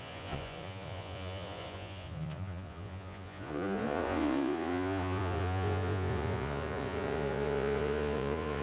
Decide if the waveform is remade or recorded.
remade